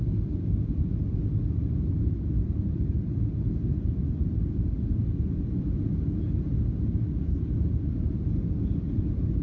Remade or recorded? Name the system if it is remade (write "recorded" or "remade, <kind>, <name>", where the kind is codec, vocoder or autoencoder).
recorded